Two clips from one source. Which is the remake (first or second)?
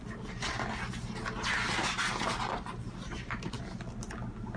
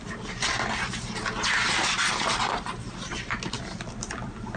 second